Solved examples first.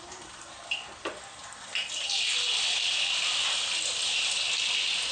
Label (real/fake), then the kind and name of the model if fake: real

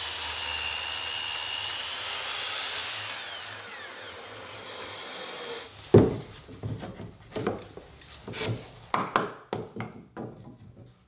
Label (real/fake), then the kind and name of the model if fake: real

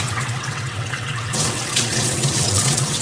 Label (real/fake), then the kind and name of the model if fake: fake, vocoder, WaveNeXt